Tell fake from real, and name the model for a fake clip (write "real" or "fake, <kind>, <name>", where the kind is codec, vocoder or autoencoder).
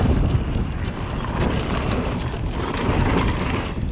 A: real